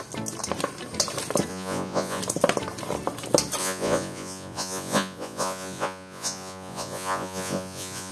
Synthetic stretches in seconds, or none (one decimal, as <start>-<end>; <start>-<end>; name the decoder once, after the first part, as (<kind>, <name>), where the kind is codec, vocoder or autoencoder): 1.5-2.2 (vocoder, Vocos); 3.6-8.1

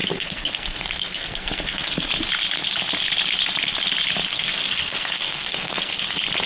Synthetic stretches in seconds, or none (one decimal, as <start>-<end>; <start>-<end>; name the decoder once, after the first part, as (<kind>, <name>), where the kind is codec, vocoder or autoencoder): 0.0-2.1 (codec, SNAC); 4.3-5.9

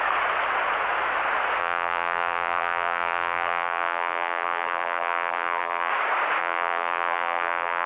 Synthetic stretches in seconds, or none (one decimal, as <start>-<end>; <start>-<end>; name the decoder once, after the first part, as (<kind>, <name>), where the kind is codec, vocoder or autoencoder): 1.6-5.9 (vocoder, BigVGAN v2); 6.4-7.9

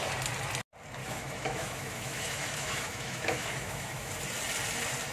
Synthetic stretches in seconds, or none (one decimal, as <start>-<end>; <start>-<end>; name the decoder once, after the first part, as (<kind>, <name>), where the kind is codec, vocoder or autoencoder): 1.0-4.1 (autoencoder, DAC-VAE)

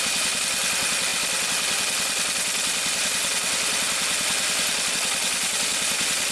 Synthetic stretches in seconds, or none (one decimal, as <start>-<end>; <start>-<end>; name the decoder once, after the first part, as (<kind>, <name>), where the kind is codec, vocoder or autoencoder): none

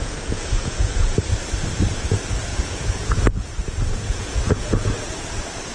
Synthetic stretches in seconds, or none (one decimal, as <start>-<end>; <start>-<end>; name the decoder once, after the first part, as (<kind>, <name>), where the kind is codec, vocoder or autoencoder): 0.0-1.1 (vocoder, Vocos); 2.5-5.1

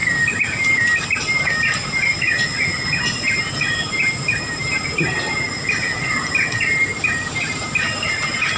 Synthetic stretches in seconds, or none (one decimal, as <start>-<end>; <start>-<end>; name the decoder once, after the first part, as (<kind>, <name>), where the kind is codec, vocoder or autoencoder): none

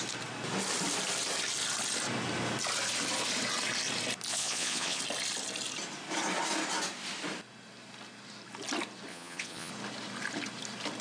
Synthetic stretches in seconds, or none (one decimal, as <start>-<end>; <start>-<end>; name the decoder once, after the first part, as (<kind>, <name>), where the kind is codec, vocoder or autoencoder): 4.3-5.0 (vocoder, Vocos); 9.1-9.7